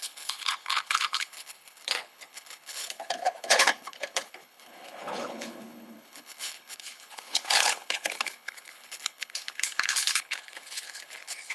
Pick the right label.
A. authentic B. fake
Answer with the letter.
B